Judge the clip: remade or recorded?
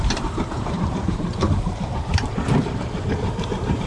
remade